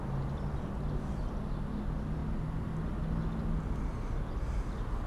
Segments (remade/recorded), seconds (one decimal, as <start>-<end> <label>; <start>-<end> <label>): 0.0-5.1 recorded